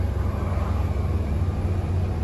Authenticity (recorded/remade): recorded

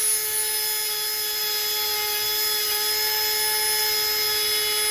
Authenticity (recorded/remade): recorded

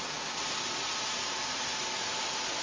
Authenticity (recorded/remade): recorded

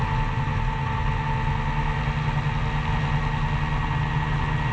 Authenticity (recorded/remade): recorded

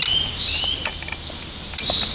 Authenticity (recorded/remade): recorded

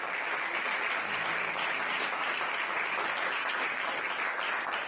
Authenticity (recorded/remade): recorded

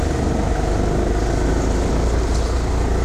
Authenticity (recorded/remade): recorded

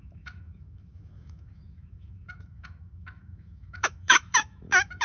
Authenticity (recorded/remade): remade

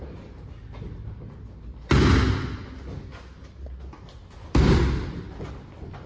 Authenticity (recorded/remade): recorded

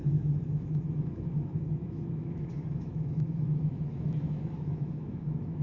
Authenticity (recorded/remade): remade